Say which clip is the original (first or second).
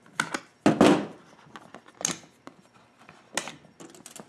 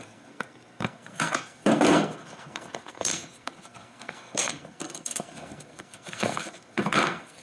first